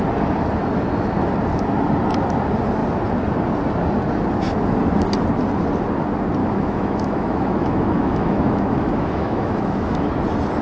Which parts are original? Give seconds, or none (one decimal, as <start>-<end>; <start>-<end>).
0.0-6.4; 10.1-10.6